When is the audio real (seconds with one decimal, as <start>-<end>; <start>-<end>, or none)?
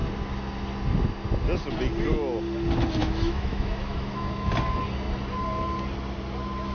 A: 0.0-3.0; 4.5-6.7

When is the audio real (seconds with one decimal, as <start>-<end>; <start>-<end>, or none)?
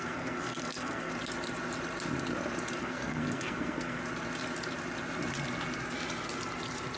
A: 1.1-2.8; 4.0-7.0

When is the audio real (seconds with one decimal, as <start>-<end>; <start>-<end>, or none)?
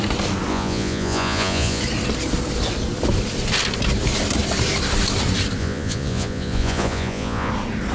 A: 0.0-0.5; 1.8-5.6; 7.5-7.9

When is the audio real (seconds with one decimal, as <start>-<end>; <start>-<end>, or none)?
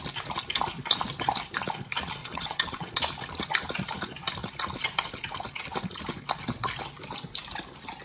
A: 0.0-2.2; 3.0-8.0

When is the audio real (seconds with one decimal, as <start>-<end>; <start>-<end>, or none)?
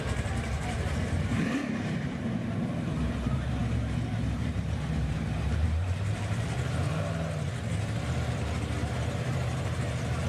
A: 6.8-9.1